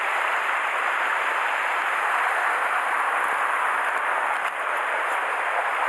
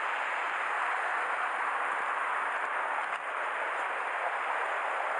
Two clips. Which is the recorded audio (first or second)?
second